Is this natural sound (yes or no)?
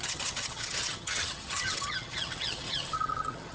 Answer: no